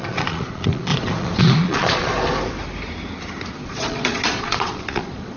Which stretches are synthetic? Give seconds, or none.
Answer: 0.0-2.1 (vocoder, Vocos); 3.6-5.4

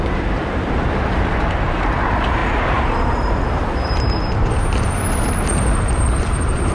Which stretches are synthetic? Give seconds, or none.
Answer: 0.0-6.7 (vocoder, BigVGAN v2)

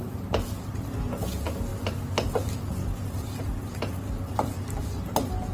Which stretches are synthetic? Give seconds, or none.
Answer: none